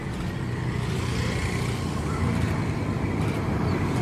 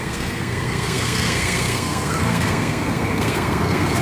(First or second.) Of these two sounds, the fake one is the second